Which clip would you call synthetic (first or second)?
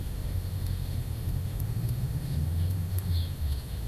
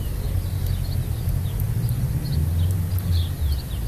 first